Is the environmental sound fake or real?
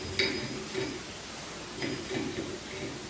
real